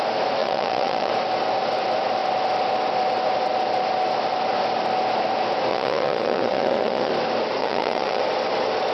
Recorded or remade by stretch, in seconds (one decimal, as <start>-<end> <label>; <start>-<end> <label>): 0.0-0.4 recorded; 0.4-1.1 remade; 1.1-5.7 recorded; 5.7-7.1 remade; 7.1-7.6 recorded; 7.6-8.2 remade; 8.2-8.9 recorded